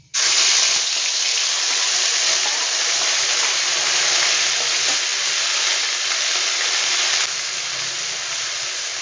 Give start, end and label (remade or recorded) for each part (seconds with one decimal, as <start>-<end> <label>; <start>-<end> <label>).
0.0-2.1 recorded; 2.1-2.7 remade; 2.7-9.0 recorded